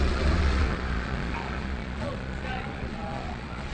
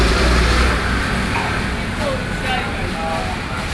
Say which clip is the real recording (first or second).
second